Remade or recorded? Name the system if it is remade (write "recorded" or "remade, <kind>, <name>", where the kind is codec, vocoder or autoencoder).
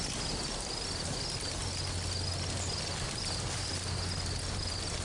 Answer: recorded